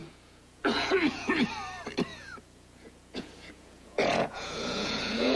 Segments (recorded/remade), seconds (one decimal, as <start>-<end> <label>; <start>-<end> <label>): 0.0-1.4 remade; 1.4-2.1 recorded; 2.1-5.4 remade